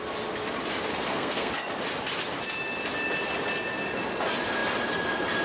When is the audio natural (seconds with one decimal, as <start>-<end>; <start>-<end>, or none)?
0.0-0.9; 1.5-5.4